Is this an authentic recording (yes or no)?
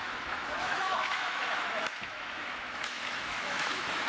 no